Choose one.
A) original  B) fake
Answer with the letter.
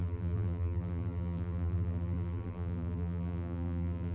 B